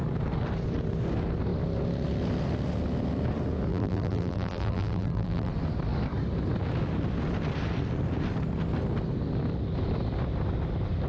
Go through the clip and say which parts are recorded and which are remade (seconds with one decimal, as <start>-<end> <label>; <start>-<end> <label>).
0.0-3.7 recorded; 3.7-5.5 remade; 5.5-11.1 recorded